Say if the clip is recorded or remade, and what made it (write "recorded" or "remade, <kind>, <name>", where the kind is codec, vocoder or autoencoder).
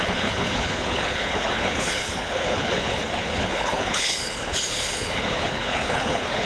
remade, codec, HILCodec